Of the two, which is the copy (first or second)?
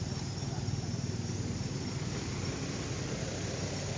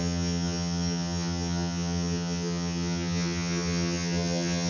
second